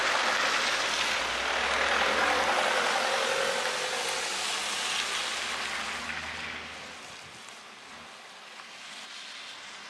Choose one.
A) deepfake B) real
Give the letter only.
B